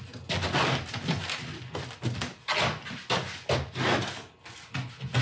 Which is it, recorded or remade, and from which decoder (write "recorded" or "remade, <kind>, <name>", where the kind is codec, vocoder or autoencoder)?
recorded